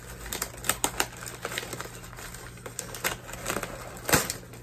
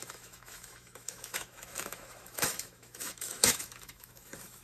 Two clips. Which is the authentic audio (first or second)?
first